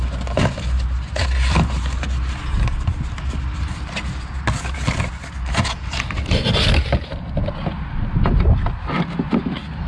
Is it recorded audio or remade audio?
recorded